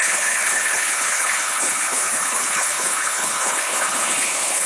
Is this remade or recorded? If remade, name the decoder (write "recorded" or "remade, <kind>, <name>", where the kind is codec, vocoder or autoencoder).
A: remade, codec, HILCodec